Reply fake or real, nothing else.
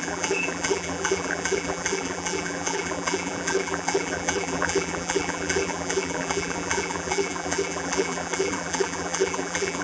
fake